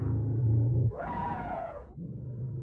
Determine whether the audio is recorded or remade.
remade